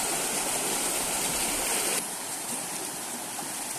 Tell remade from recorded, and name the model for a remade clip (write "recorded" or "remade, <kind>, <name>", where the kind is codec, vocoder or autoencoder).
recorded